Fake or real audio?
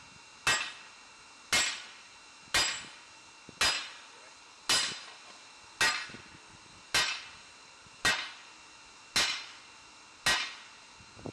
real